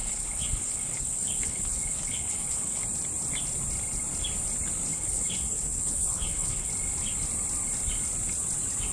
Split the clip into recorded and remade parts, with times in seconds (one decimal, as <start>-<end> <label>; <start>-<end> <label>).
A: 0.0-2.8 remade; 2.8-4.9 recorded; 4.9-6.7 remade; 6.7-8.9 recorded